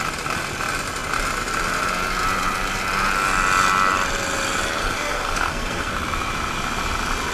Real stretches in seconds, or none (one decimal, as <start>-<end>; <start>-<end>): 0.0-4.8; 5.9-7.3